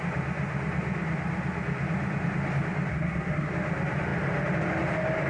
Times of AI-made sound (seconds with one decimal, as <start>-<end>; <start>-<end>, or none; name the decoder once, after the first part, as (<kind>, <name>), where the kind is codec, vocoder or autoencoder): 2.9-3.5 (codec, SNAC)